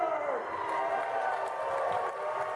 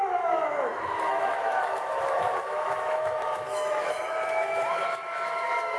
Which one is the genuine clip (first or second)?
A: first